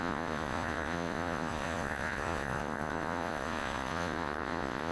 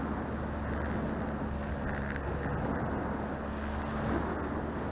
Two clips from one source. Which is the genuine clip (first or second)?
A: second